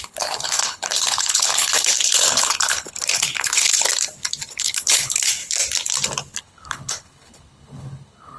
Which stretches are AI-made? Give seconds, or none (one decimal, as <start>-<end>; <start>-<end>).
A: 0.0-3.9; 4.5-5.4; 6.4-8.4